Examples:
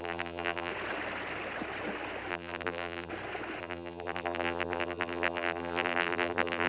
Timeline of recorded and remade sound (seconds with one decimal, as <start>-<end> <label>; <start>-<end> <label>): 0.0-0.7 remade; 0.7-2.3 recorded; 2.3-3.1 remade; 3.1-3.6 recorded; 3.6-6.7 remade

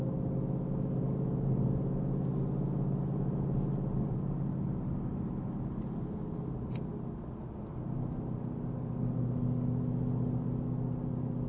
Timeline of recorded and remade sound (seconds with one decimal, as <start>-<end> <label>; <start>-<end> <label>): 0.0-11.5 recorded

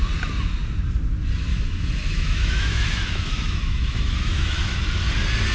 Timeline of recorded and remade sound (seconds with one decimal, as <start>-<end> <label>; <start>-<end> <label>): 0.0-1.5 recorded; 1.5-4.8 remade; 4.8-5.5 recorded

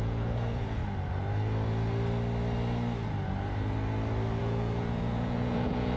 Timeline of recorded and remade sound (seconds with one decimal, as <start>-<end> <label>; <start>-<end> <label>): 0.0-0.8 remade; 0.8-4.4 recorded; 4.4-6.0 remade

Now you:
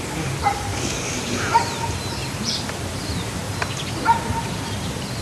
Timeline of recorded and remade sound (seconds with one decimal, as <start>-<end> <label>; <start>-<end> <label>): 0.0-0.7 recorded; 0.7-1.2 remade; 1.2-5.2 recorded

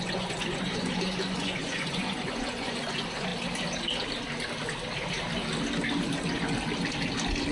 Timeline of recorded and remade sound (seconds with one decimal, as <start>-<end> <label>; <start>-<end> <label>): 0.0-3.3 remade; 3.3-7.5 recorded

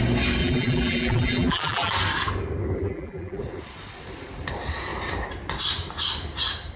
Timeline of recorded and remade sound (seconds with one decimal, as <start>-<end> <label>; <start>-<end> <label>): 0.0-0.4 recorded; 0.4-1.9 remade; 1.9-2.8 recorded; 2.8-3.4 remade; 3.4-6.8 recorded